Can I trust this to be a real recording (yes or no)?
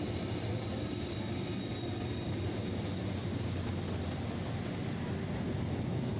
yes